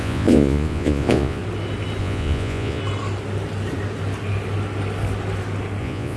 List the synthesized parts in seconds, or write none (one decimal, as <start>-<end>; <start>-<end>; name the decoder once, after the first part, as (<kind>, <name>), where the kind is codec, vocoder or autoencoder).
0.0-1.4 (vocoder, Vocos); 2.0-2.8; 5.8-6.2